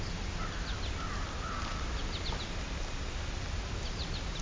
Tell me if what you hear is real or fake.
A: real